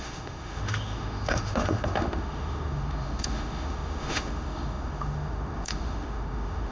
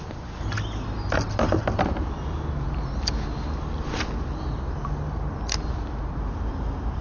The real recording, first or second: second